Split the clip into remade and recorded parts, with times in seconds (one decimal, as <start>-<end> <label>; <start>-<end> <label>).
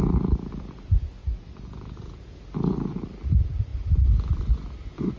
0.0-1.2 recorded; 1.2-2.2 remade; 2.2-5.2 recorded